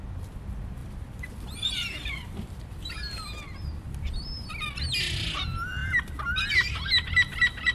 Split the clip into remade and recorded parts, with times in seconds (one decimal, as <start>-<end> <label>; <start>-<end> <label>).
0.0-0.8 recorded; 0.8-4.5 remade; 4.5-5.8 recorded; 5.8-7.7 remade